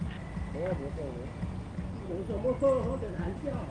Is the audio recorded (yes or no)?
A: yes